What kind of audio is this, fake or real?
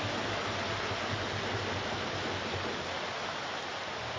real